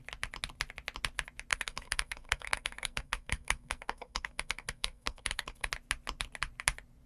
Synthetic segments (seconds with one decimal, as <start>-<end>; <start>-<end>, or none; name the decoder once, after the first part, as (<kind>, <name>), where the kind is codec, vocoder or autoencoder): 1.5-5.7 (codec, SNAC)